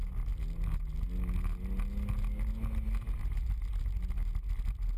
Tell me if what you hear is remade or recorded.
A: recorded